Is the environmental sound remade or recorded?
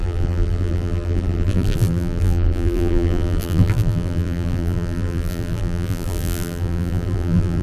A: remade